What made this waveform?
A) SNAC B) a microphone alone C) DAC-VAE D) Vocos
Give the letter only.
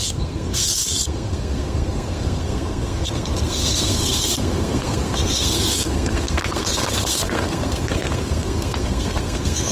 A